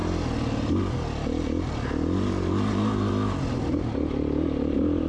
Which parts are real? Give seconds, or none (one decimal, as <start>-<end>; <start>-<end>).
0.0-5.1